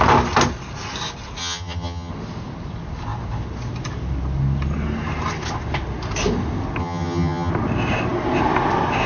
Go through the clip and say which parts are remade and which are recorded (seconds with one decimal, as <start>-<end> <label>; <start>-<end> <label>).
0.0-1.4 recorded; 1.4-2.1 remade; 2.1-6.8 recorded; 6.8-7.5 remade; 7.5-9.1 recorded